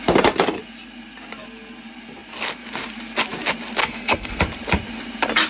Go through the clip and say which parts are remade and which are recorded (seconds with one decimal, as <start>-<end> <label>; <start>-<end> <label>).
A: 0.0-3.8 recorded; 3.8-4.4 remade; 4.4-5.5 recorded